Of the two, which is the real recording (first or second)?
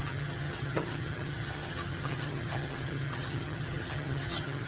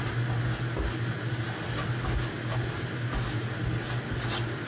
second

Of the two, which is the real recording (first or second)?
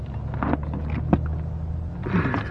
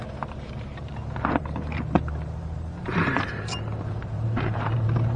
first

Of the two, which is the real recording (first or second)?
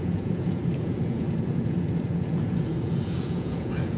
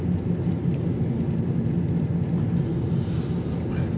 second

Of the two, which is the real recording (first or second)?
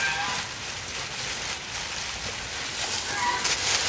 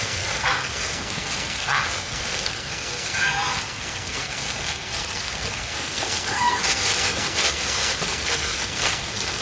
first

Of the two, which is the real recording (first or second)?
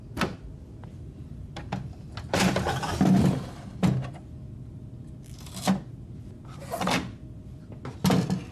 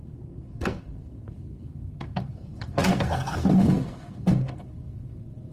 first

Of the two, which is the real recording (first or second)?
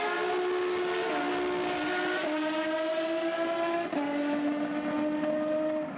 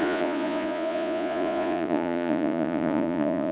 first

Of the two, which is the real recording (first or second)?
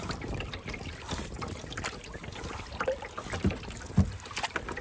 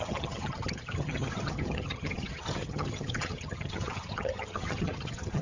first